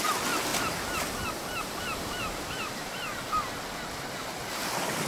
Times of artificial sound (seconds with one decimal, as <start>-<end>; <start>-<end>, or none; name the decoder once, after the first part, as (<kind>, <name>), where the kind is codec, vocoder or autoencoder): 0.5-3.6 (vocoder, BigVGAN v2)

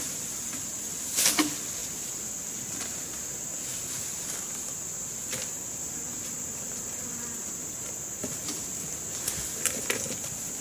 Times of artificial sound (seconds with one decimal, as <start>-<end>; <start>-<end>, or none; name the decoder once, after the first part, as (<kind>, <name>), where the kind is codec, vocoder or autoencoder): 3.7-5.4 (vocoder, BigVGAN v2)

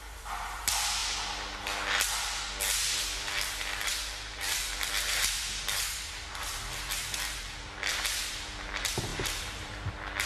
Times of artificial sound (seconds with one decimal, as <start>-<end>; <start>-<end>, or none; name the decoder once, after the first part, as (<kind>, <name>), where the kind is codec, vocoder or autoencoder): 0.0-1.0 (vocoder, BigVGAN v2); 3.0-10.3

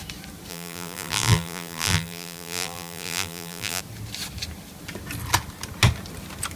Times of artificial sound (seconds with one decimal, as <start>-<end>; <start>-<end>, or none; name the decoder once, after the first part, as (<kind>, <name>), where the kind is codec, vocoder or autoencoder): 0.5-3.8 (vocoder, BigVGAN v2)

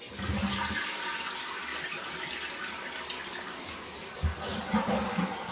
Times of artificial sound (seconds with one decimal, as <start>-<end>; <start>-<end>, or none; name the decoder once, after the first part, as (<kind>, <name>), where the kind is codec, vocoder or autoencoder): none

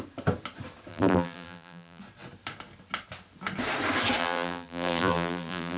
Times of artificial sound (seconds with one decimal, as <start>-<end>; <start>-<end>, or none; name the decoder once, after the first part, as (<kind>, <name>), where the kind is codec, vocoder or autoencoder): 0.9-2.0 (vocoder, BigVGAN v2); 4.2-5.8